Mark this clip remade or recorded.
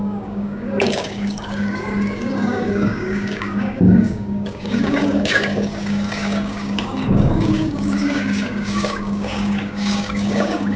remade